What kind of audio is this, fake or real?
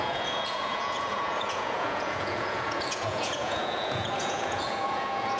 fake